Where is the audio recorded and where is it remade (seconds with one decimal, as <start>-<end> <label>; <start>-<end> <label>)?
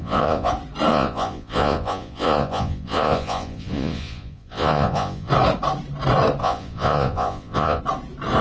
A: 0.0-0.5 remade; 0.5-0.9 recorded; 0.9-5.3 remade; 5.3-6.4 recorded; 6.4-7.8 remade; 7.8-8.4 recorded